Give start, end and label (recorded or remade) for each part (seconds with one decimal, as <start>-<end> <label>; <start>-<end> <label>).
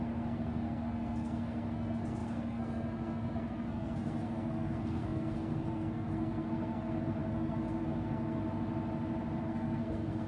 0.0-8.4 remade; 8.4-9.4 recorded; 9.4-10.3 remade